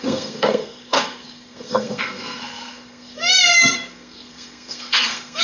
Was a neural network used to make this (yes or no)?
yes